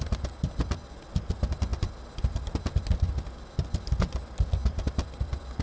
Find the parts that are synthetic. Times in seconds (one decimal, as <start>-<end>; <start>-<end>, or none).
none